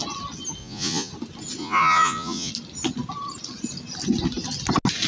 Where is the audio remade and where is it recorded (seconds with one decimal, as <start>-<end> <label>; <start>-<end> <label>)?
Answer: 0.0-0.6 recorded; 0.6-1.1 remade; 1.1-1.6 recorded; 1.6-2.5 remade; 2.5-5.1 recorded